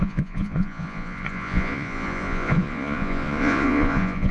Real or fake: fake